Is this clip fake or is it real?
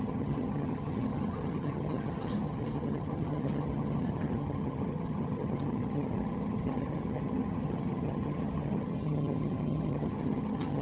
fake